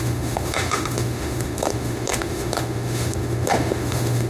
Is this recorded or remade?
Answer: remade